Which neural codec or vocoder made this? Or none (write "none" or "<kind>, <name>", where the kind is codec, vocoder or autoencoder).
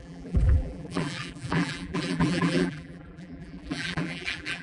vocoder, BigVGAN v2